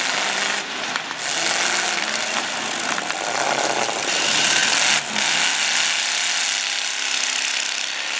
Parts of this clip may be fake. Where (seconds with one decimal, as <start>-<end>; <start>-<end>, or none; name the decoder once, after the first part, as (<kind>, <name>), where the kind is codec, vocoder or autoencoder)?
none